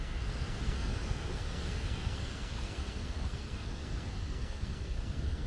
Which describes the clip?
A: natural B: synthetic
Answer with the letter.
B